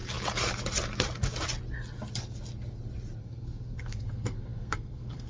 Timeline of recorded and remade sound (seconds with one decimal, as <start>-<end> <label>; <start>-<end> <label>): 0.0-3.2 recorded; 3.2-5.3 remade